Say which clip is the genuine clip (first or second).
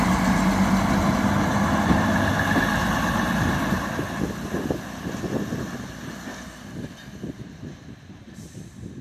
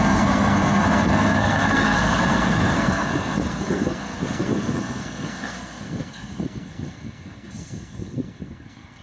first